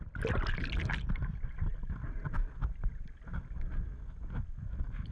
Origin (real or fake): real